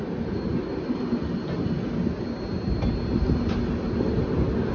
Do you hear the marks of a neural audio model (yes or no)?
no